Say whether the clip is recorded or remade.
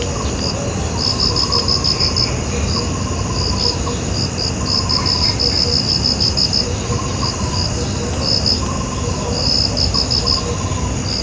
recorded